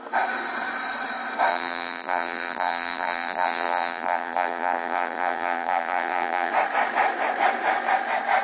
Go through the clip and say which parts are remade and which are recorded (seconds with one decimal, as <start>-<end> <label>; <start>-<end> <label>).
0.0-1.5 recorded; 1.5-6.5 remade; 6.5-8.4 recorded